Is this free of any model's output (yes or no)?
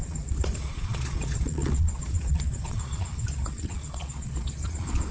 no